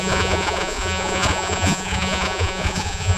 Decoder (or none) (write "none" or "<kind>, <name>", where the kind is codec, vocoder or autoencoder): vocoder, Vocos